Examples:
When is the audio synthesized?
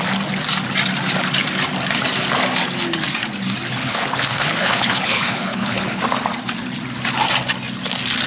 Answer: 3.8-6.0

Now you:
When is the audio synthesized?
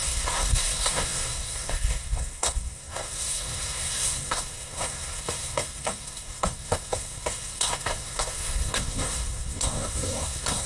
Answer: 0.0-10.7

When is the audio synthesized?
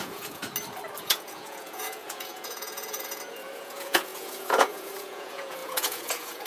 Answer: 0.0-0.4; 1.0-6.5